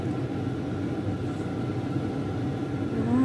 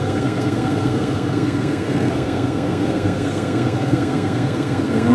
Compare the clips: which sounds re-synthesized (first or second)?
second